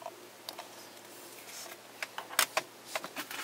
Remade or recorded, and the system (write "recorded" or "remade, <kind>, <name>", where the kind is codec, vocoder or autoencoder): recorded